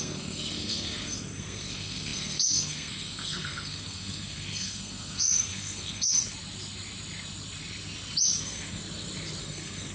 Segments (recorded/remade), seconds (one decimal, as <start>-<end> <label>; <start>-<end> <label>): 0.0-6.2 remade; 6.2-8.4 recorded; 8.4-8.8 remade; 8.8-9.4 recorded; 9.4-9.9 remade